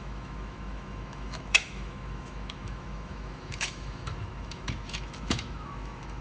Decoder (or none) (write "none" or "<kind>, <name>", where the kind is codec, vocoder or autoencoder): autoencoder, DAC-VAE